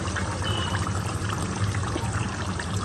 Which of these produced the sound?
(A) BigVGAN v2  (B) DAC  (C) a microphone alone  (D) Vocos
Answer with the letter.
A